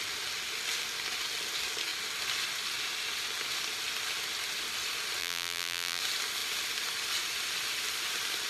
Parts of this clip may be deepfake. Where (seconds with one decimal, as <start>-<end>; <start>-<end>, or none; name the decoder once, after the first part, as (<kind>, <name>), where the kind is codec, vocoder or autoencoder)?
5.2-6.0 (vocoder, BigVGAN v2)